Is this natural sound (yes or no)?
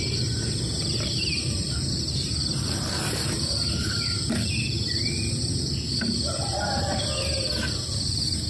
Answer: no